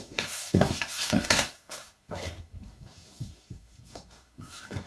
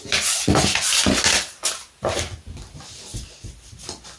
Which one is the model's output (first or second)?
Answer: first